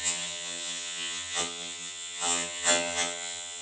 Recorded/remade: remade